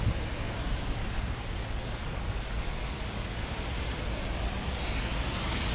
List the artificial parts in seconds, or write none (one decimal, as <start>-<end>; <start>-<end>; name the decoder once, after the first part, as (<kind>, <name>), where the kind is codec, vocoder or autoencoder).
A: 1.0-3.3 (codec, DAC)